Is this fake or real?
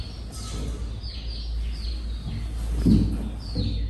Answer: real